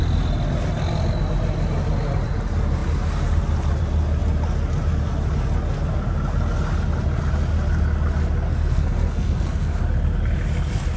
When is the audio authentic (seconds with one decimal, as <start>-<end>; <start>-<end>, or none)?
0.0-8.5; 9.8-11.0